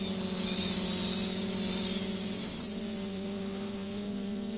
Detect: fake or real real